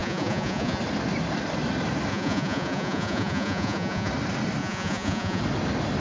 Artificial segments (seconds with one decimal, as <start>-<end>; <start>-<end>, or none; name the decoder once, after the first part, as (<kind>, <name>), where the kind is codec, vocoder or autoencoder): 0.0-0.8 (vocoder, Vocos); 2.1-4.1; 4.6-5.4